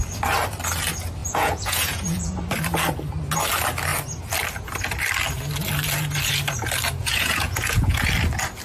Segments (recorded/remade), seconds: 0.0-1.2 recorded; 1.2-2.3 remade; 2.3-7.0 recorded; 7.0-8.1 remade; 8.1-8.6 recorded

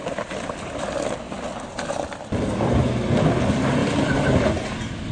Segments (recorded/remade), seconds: 0.0-2.7 recorded; 2.7-5.1 remade